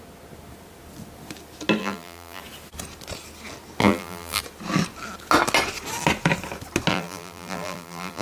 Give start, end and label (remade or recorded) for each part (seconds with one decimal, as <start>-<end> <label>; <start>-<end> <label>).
0.0-1.8 recorded; 1.8-2.4 remade; 2.4-3.8 recorded; 3.8-4.4 remade; 4.4-6.9 recorded; 6.9-8.2 remade